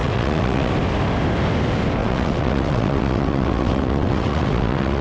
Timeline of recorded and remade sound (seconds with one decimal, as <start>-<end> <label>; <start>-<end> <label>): 0.0-0.7 remade; 0.7-2.0 recorded; 2.0-5.0 remade